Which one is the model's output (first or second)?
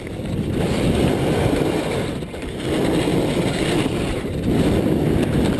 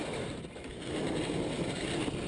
first